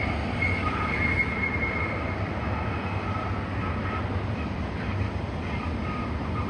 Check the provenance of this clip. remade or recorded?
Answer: recorded